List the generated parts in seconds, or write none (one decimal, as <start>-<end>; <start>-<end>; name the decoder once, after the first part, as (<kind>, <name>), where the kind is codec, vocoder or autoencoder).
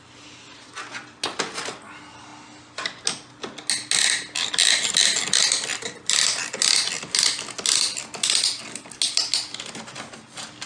none